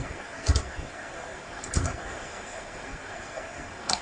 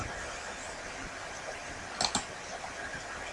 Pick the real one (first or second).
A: second